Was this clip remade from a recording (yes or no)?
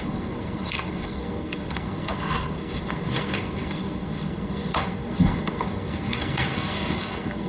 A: yes